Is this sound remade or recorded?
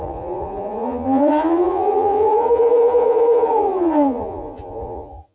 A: remade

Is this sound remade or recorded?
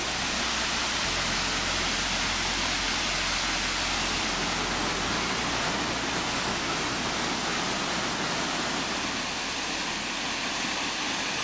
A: recorded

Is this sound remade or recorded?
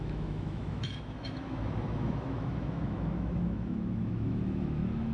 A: remade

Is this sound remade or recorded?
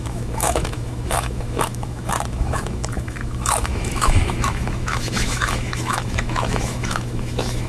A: remade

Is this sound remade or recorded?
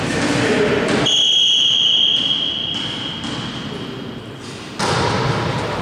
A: remade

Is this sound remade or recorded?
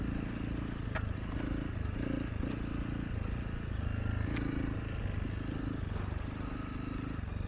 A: recorded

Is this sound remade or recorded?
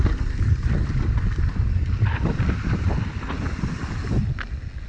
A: recorded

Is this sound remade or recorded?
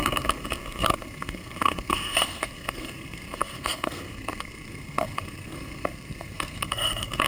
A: remade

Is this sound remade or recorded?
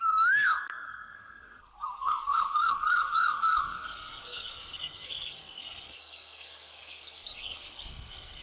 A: remade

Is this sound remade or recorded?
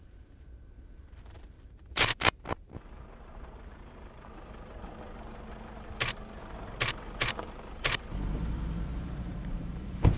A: remade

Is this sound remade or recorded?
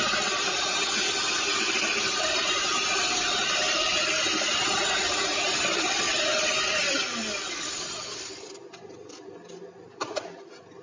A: remade